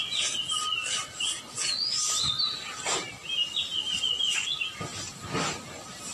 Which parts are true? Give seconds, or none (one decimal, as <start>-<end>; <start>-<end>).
0.0-6.1